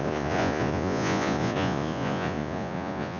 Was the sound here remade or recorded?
remade